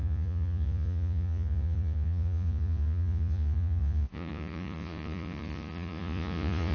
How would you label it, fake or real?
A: fake